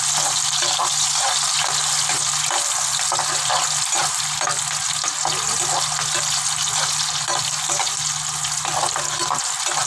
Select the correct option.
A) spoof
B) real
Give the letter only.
B